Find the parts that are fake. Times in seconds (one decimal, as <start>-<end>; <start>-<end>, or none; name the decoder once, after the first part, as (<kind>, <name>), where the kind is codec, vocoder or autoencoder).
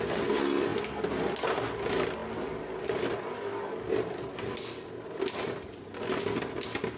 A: none